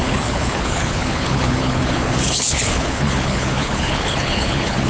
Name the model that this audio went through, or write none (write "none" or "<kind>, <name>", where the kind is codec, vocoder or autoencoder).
codec, HILCodec